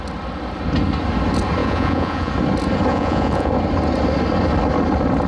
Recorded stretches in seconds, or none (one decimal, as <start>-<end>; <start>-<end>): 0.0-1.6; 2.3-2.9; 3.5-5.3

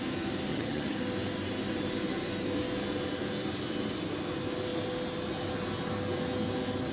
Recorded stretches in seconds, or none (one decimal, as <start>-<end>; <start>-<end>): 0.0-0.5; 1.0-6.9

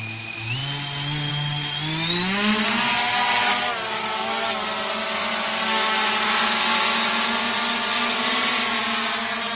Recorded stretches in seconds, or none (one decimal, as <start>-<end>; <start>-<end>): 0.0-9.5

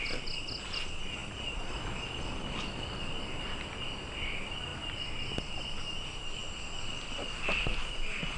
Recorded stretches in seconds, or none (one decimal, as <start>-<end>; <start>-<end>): 0.0-8.4

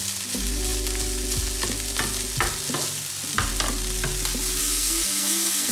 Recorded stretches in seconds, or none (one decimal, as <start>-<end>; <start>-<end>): 0.0-4.6

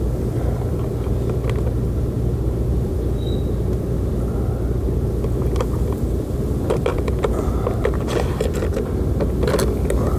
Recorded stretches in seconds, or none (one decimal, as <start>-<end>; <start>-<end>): 0.0-6.9; 7.4-10.2

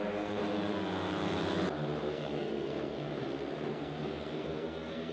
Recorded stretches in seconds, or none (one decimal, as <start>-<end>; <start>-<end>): 0.4-2.1; 3.1-3.7

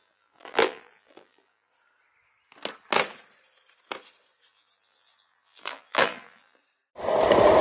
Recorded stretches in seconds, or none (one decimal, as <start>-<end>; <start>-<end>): 1.7-4.5; 6.6-7.6